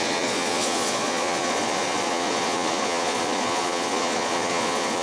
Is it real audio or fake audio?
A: fake